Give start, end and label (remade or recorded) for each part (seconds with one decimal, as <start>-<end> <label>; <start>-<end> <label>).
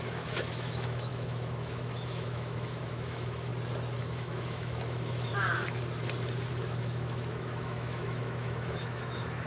0.0-3.5 remade; 3.5-4.0 recorded; 4.0-5.3 remade; 5.3-6.5 recorded; 6.5-9.5 remade